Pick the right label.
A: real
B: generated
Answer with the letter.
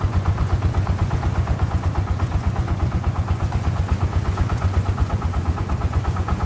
B